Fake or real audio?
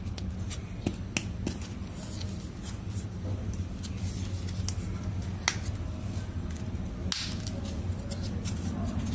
real